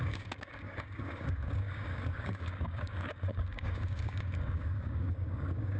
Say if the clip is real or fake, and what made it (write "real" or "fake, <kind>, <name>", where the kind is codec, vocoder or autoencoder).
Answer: fake, codec, DAC